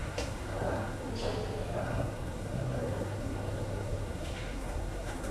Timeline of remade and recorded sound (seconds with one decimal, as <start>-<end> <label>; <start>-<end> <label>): 0.0-1.1 remade; 1.1-1.8 recorded; 1.8-5.3 remade